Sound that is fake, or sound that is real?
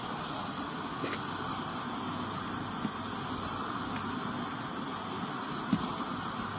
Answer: real